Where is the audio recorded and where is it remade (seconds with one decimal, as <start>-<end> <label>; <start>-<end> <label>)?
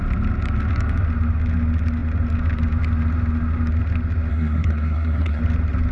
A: 0.0-4.3 recorded; 4.3-5.4 remade; 5.4-5.9 recorded